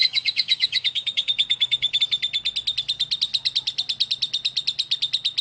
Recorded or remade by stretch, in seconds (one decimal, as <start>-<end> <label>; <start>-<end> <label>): 0.0-2.0 remade; 2.0-5.4 recorded